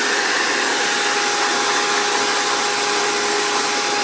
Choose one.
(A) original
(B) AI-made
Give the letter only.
A